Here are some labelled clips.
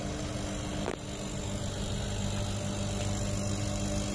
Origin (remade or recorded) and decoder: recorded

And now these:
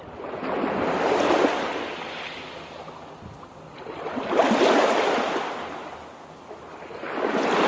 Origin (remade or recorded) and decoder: recorded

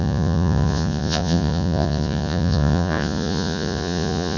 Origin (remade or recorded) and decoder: remade, vocoder, Vocos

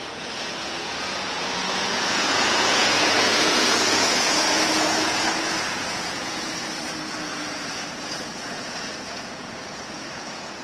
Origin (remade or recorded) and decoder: remade, vocoder, Vocos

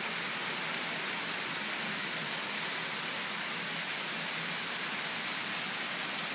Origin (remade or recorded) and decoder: recorded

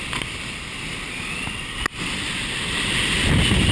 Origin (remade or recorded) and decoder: recorded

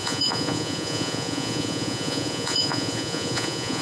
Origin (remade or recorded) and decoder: remade, vocoder, Vocos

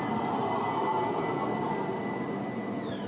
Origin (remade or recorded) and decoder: recorded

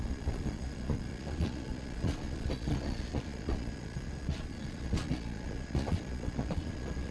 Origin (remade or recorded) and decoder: remade, vocoder, Vocos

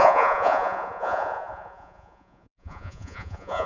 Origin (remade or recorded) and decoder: remade, vocoder, Vocos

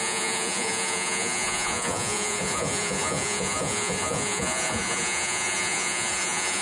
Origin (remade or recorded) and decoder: remade, vocoder, Vocos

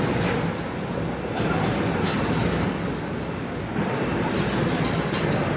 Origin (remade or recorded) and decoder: recorded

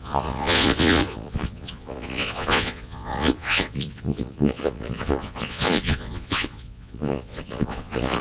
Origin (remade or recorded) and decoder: remade, vocoder, Vocos